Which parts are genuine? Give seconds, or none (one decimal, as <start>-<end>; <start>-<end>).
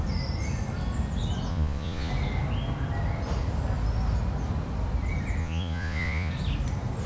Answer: 0.0-1.5; 2.1-5.4; 6.3-7.1